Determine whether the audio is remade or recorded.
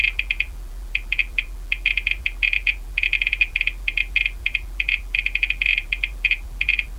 remade